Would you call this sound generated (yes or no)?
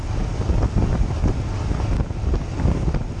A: no